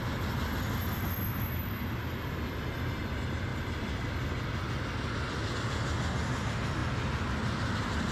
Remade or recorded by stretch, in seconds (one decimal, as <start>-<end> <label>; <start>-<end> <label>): 0.0-8.1 recorded